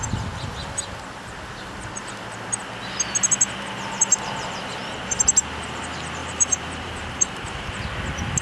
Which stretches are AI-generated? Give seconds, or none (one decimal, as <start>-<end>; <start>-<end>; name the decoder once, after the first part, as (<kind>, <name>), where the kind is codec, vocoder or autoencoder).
6.2-7.8 (vocoder, BigVGAN v2)